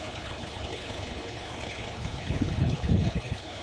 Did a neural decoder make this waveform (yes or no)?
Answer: yes